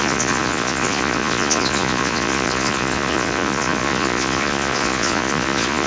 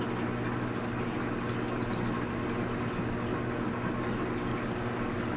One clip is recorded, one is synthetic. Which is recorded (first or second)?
second